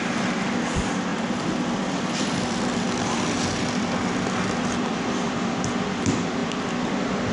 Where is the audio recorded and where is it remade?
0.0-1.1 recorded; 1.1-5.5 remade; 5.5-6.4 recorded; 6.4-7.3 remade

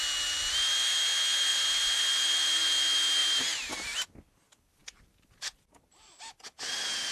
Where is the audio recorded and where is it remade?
0.0-1.5 recorded; 1.5-2.6 remade; 2.6-3.2 recorded; 3.2-3.7 remade; 3.7-4.8 recorded; 4.8-7.1 remade

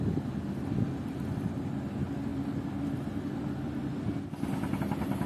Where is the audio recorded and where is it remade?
0.0-5.3 recorded

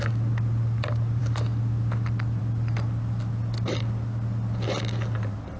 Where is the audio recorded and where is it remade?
0.0-5.6 recorded

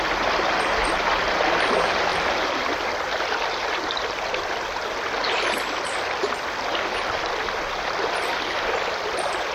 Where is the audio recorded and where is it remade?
0.0-2.1 recorded; 2.1-6.6 remade; 6.6-9.5 recorded